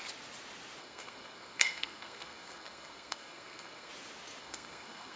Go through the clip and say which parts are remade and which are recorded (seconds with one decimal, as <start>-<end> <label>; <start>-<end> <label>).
0.0-0.8 recorded; 0.8-3.9 remade; 3.9-4.4 recorded; 4.4-5.2 remade